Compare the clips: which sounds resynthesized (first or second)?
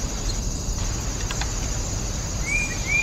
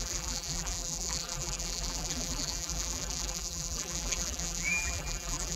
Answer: second